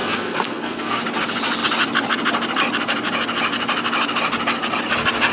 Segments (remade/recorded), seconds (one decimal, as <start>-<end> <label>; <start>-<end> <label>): 0.0-1.0 remade; 1.0-5.3 recorded